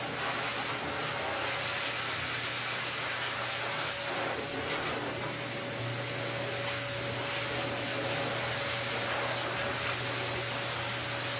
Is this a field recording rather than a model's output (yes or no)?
yes